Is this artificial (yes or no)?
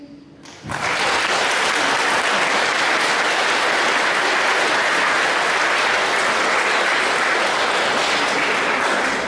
no